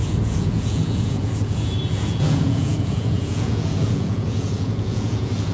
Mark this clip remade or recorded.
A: remade